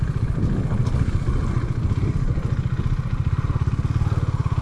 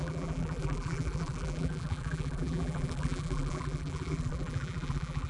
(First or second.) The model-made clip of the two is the second